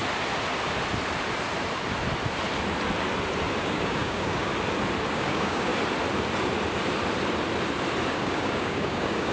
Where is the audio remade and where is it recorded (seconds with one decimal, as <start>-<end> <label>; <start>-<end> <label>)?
0.0-3.6 recorded; 3.6-4.5 remade; 4.5-5.1 recorded; 5.1-5.7 remade; 5.7-8.1 recorded; 8.1-9.3 remade